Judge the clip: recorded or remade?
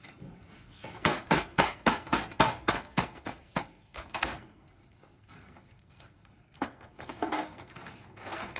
remade